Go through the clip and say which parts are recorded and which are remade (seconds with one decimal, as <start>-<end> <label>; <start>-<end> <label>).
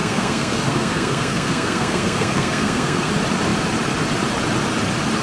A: 0.0-3.1 remade; 3.1-5.2 recorded